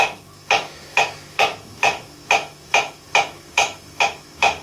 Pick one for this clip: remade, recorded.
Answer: remade